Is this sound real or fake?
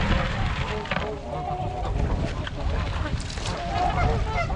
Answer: real